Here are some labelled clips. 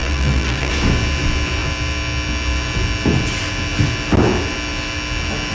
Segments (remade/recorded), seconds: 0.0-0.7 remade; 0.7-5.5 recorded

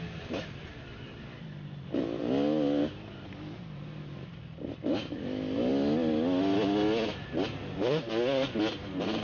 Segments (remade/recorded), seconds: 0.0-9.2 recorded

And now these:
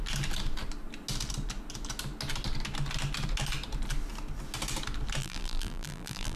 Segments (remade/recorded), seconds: 0.0-5.2 recorded; 5.2-6.4 remade